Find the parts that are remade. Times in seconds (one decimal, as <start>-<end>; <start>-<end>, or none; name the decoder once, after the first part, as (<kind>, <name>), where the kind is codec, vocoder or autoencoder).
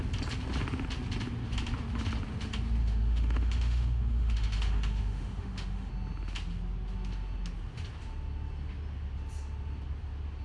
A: 2.8-5.9 (autoencoder, DAC-VAE)